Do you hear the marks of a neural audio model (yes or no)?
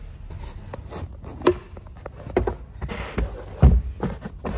no